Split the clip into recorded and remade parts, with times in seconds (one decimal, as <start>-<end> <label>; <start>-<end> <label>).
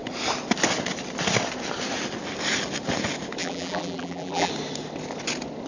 0.0-3.4 recorded; 3.4-4.5 remade; 4.5-5.7 recorded